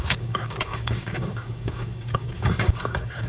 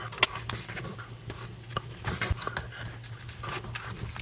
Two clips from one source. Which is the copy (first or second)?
first